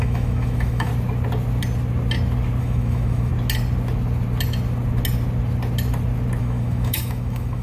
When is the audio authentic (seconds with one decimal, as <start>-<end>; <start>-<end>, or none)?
0.9-2.6; 3.3-6.4